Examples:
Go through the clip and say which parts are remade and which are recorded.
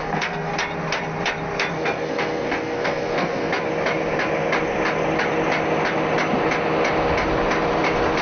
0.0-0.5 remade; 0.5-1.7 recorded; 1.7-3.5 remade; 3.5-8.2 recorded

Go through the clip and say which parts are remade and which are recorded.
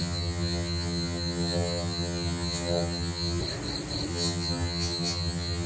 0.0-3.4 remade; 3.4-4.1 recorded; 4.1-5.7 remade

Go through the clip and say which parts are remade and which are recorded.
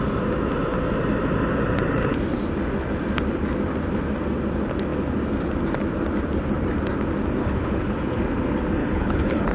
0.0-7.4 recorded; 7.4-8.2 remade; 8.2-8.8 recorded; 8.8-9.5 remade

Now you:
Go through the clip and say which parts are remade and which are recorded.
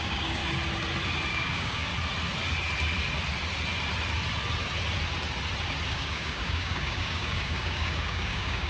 0.0-0.4 remade; 0.4-1.3 recorded; 1.3-1.9 remade; 1.9-5.9 recorded; 5.9-8.7 remade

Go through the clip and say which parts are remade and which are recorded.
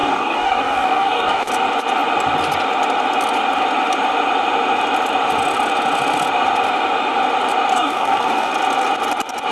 0.0-1.5 remade; 1.5-7.7 recorded; 7.7-8.5 remade; 8.5-9.5 recorded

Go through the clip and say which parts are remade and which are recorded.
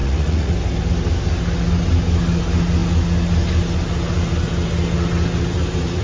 0.0-0.5 remade; 0.5-6.0 recorded